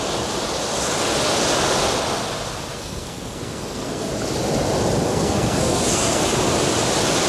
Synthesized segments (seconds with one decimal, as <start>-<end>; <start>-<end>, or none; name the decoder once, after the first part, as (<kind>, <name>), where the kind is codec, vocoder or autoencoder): 2.7-4.1 (codec, SNAC); 5.1-6.2